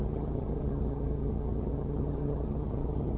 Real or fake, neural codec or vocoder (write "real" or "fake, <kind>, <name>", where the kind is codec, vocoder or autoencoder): fake, vocoder, HiFi-GAN